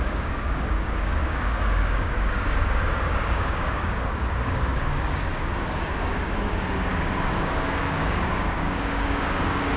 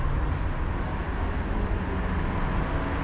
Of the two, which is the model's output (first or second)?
first